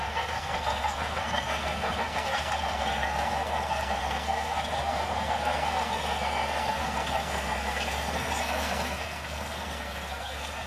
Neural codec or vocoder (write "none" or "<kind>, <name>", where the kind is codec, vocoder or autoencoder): codec, SNAC